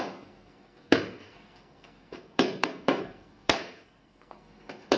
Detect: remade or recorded remade